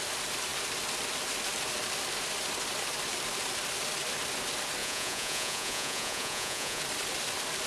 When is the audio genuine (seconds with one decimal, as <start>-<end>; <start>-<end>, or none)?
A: 0.0-4.8; 6.8-7.7